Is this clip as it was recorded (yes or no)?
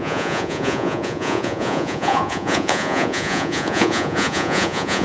no